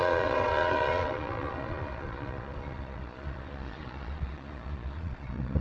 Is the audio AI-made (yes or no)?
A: yes